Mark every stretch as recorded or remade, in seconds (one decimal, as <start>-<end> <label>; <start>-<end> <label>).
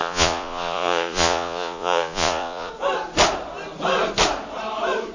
0.0-2.7 remade; 2.7-5.1 recorded